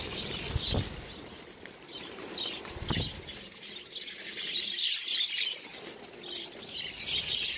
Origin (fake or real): real